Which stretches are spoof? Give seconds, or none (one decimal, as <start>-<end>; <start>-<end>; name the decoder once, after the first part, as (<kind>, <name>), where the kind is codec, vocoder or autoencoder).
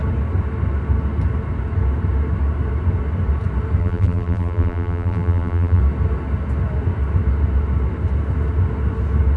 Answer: 3.8-5.8 (vocoder, BigVGAN v2)